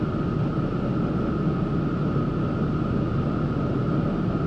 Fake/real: real